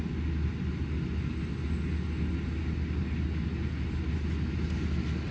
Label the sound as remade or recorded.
recorded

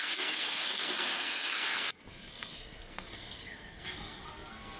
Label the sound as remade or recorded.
remade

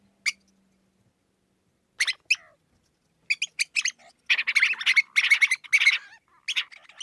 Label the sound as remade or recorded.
recorded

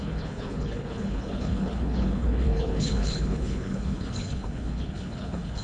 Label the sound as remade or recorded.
remade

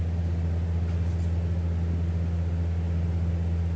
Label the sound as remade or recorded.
recorded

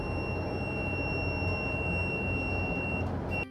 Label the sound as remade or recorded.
recorded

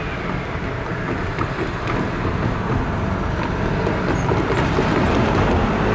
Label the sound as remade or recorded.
recorded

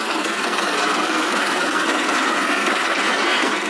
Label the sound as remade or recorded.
remade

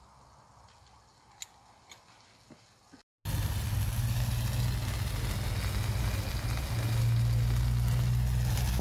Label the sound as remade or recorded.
recorded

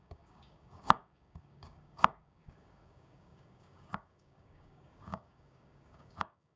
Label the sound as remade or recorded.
remade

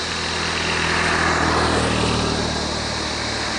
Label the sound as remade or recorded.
recorded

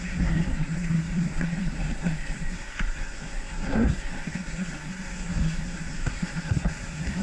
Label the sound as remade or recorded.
remade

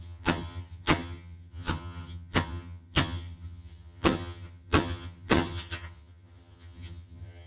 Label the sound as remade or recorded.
remade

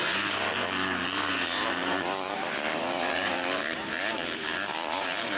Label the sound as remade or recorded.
remade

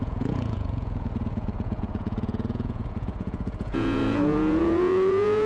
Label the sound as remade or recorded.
remade